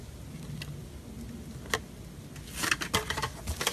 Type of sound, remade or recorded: recorded